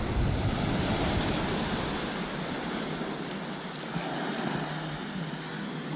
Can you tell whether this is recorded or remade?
recorded